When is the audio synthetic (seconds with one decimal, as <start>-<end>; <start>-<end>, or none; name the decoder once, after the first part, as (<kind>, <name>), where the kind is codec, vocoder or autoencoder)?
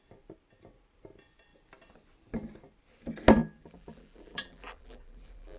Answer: 3.6-5.6 (vocoder, BigVGAN v2)